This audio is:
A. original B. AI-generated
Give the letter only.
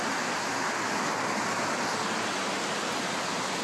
B